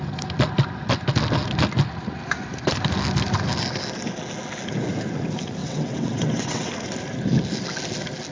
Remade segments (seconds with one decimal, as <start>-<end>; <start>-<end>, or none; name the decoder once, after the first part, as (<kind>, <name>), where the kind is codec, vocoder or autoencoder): 5.6-6.7 (vocoder, WaveNeXt)